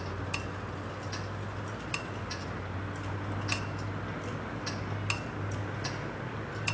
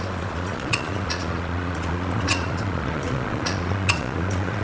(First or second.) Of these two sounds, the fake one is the second